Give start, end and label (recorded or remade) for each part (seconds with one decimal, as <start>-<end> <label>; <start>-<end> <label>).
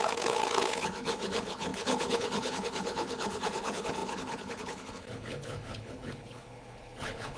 0.0-7.4 remade